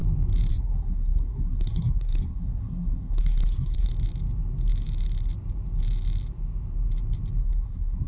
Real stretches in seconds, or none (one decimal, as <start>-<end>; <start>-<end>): 0.0-0.5; 3.9-7.4